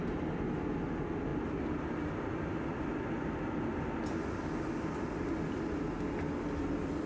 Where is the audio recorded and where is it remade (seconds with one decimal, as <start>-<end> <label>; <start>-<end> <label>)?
0.0-7.1 recorded